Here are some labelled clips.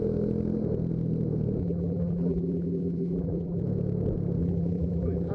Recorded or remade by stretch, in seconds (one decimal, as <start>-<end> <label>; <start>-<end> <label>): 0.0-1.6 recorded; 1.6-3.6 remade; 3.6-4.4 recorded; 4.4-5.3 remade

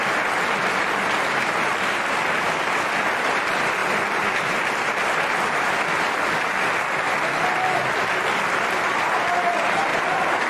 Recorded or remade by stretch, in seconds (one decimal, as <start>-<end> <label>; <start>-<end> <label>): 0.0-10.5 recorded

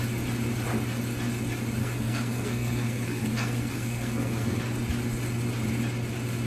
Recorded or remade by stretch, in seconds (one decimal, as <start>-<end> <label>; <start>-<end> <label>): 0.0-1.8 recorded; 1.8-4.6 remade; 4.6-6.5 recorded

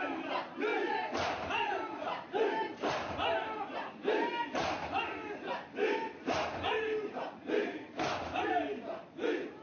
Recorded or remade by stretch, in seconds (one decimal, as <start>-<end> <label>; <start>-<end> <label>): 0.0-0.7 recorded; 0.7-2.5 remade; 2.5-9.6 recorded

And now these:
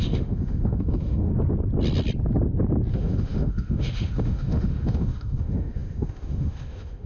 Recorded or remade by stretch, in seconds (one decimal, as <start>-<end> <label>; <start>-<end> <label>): 0.0-1.3 remade; 1.3-2.9 recorded; 2.9-7.1 remade

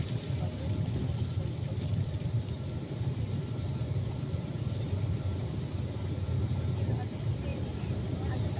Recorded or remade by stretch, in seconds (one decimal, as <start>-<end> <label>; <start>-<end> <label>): 0.0-1.0 recorded; 1.0-5.4 remade; 5.4-7.5 recorded; 7.5-8.2 remade; 8.2-8.6 recorded